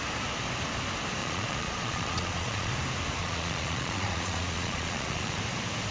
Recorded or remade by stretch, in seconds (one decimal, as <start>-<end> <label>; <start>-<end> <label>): 0.0-1.2 recorded; 1.2-2.7 remade; 2.7-3.2 recorded; 3.2-5.4 remade; 5.4-5.9 recorded